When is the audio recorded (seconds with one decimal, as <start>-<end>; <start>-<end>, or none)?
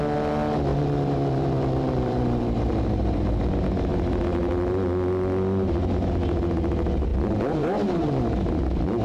0.0-0.7; 3.5-7.1; 8.2-9.0